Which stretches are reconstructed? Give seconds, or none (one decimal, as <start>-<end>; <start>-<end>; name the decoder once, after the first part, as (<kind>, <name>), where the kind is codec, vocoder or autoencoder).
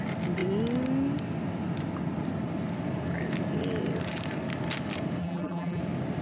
5.2-5.8 (vocoder, BigVGAN v2)